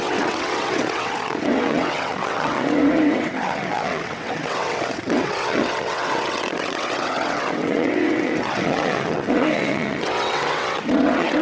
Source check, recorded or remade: remade